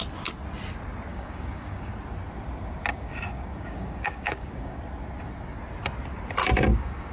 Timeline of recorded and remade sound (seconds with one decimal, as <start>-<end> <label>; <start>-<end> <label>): 0.0-1.1 recorded; 1.1-1.9 remade; 1.9-2.9 recorded; 2.9-4.8 remade; 4.8-6.4 recorded; 6.4-7.1 remade